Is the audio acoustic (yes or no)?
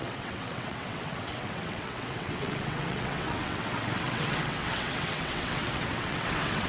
no